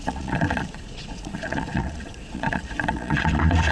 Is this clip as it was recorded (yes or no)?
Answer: no